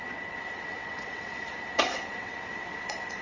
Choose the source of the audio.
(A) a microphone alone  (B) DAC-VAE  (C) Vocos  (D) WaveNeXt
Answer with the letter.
D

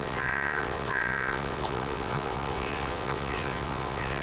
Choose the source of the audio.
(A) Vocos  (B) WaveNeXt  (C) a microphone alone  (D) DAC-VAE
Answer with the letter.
B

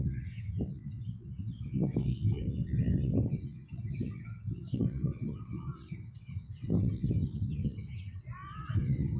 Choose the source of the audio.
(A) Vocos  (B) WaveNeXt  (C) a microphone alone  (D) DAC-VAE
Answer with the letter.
B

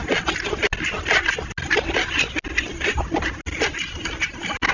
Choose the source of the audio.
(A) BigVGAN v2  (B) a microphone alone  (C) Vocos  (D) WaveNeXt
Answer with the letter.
B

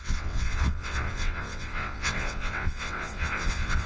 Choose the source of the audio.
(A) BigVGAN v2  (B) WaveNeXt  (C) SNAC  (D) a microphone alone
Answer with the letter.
B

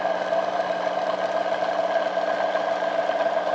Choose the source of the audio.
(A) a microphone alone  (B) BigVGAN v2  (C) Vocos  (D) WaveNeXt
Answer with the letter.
A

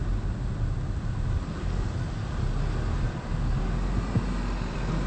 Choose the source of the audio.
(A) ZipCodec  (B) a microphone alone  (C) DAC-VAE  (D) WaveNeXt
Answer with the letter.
B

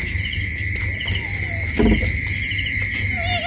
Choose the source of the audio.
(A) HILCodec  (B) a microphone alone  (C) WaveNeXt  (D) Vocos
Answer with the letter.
B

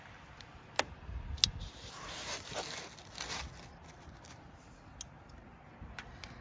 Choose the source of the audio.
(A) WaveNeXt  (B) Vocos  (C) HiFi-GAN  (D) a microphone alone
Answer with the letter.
D